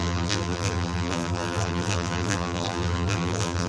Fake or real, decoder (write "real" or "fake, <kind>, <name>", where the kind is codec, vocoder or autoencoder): fake, vocoder, BigVGAN v2